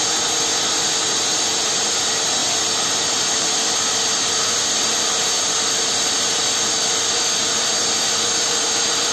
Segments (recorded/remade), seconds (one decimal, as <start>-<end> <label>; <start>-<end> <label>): 0.0-9.1 recorded

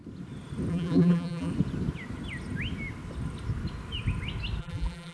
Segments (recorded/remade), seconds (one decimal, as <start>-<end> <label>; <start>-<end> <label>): 0.0-0.7 recorded; 0.7-1.5 remade; 1.5-4.6 recorded; 4.6-5.1 remade

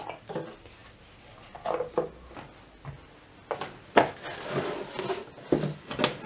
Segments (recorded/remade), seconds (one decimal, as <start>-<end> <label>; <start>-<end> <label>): 0.0-6.3 recorded

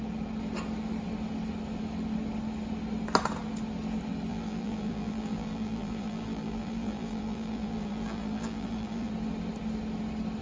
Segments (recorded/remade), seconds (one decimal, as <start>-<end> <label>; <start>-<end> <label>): 0.0-4.3 recorded; 4.3-9.1 remade; 9.1-10.4 recorded

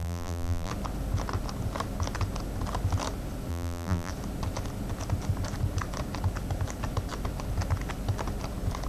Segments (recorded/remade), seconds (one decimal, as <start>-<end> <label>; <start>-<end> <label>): 0.0-0.7 remade; 0.7-3.5 recorded; 3.5-4.1 remade; 4.1-8.9 recorded

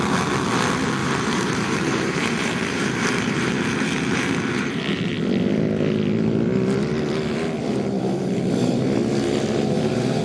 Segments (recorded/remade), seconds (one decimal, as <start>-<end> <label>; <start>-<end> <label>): 0.0-1.0 recorded; 1.0-5.1 remade; 5.1-10.2 recorded

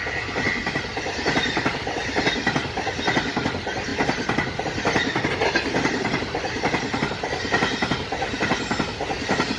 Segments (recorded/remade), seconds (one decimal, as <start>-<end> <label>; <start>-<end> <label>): 0.0-9.6 recorded